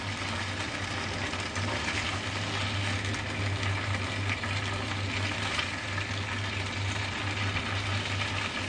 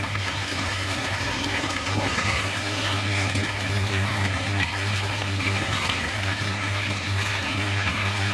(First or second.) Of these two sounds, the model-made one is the second